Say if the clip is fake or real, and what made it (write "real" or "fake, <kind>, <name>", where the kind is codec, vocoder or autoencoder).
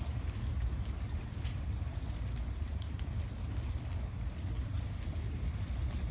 real